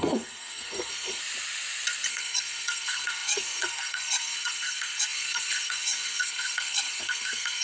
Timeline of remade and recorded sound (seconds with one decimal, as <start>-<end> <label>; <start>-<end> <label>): 0.0-1.2 remade; 1.2-2.1 recorded; 2.1-7.6 remade